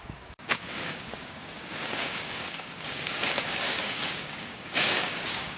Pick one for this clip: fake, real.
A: fake